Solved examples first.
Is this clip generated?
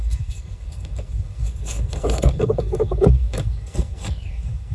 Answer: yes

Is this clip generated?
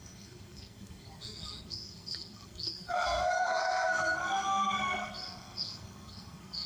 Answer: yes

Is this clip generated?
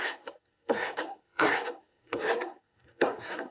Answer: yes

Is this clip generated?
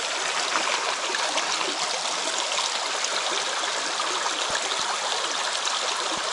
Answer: no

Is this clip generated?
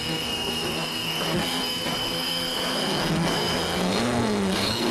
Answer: yes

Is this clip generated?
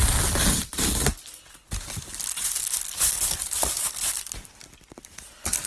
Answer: no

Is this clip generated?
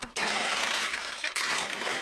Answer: yes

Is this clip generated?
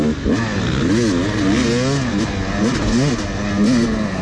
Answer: no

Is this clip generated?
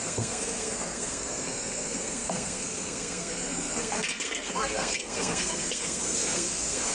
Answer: yes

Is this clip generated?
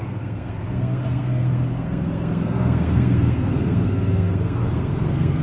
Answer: yes